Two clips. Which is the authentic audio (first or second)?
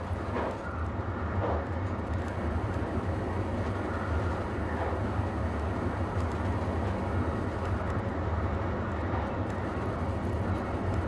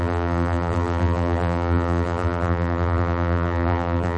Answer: first